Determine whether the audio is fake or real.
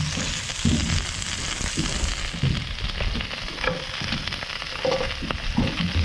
real